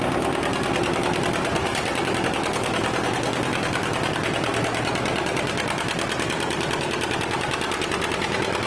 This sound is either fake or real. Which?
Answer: real